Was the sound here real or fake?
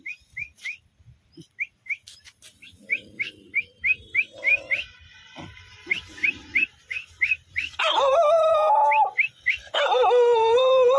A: fake